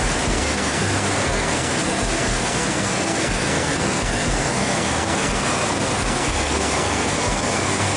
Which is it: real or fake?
fake